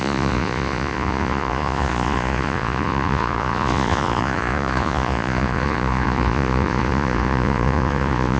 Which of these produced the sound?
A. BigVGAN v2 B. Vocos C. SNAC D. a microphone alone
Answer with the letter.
B